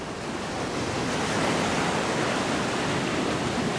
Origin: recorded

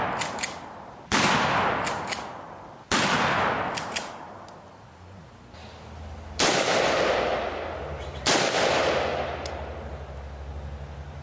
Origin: recorded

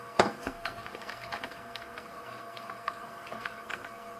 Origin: remade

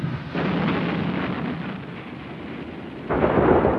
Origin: recorded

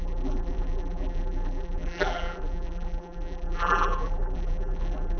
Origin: remade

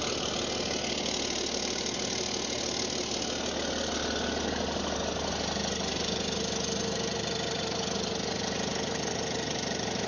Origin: recorded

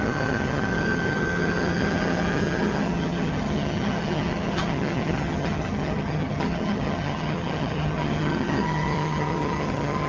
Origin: remade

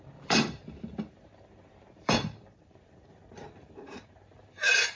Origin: remade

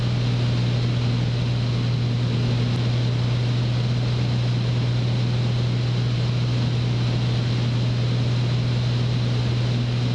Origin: recorded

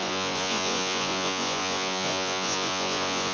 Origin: remade